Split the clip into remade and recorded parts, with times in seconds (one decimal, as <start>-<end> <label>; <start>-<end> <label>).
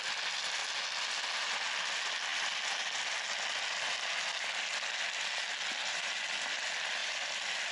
0.0-7.7 recorded